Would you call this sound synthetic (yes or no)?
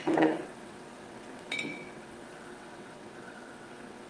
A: yes